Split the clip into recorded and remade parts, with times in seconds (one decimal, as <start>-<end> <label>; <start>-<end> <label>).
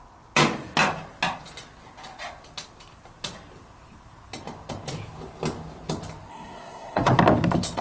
0.0-6.3 recorded; 6.3-7.1 remade; 7.1-7.8 recorded